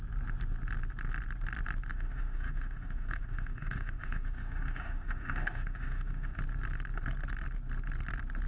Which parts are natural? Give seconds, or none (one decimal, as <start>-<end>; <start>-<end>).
0.0-1.9; 6.4-8.5